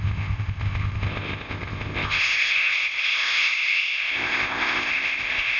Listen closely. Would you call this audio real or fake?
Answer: fake